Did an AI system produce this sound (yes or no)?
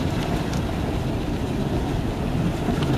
no